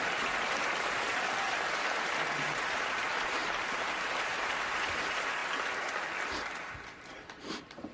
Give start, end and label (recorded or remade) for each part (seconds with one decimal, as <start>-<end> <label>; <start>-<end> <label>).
0.0-5.4 remade; 5.4-6.8 recorded; 6.8-7.9 remade